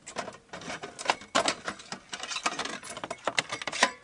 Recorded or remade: recorded